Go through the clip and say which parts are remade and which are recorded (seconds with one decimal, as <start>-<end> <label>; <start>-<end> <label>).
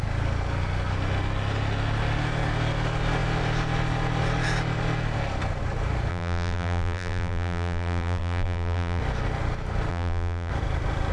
0.0-6.1 recorded; 6.1-9.0 remade; 9.0-9.9 recorded; 9.9-10.5 remade; 10.5-11.1 recorded